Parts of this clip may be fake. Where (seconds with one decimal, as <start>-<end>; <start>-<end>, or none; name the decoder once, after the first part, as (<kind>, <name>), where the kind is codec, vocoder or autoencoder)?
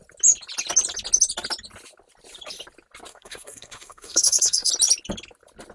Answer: 3.1-4.7 (codec, SNAC)